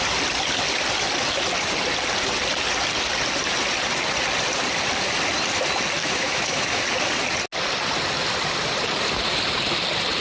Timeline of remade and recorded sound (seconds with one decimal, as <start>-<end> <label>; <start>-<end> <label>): 0.0-6.0 recorded; 6.0-6.8 remade; 6.8-10.2 recorded